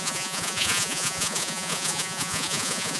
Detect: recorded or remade remade